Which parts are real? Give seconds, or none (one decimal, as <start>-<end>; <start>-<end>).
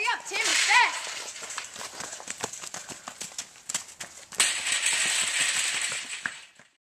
0.0-0.5; 3.4-5.4